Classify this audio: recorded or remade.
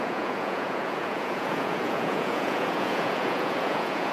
remade